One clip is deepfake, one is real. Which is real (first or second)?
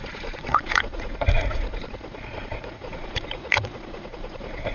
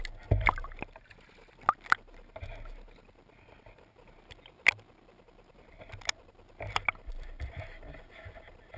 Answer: second